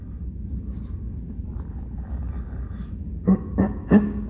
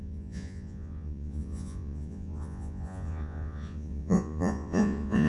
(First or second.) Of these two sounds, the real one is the first